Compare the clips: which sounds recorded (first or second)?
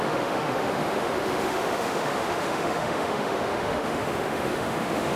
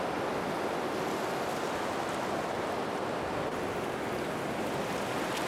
second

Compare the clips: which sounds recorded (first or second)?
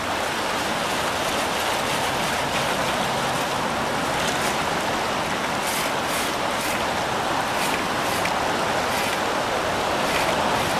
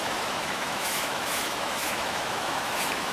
first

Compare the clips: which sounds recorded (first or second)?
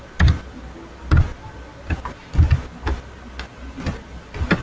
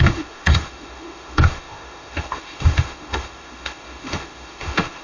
first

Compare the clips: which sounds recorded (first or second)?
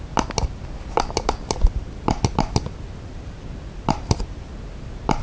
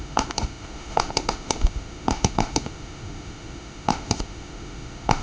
first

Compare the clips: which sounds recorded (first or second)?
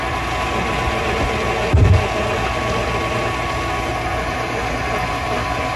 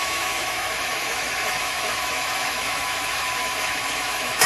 first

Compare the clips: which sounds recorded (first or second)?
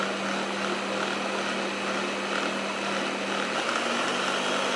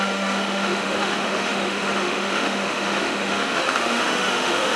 first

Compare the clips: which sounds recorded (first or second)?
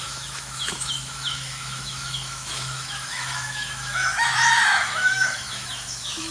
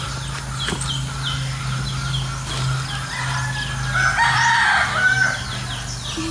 second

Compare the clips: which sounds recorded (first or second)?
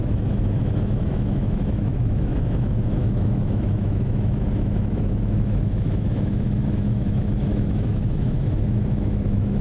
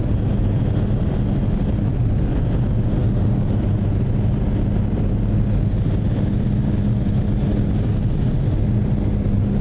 second